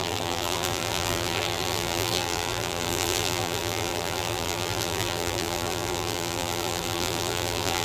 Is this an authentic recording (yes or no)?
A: no